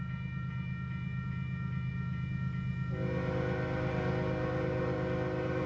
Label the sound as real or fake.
real